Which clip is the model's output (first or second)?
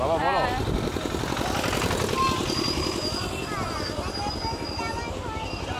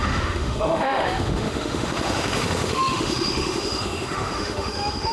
second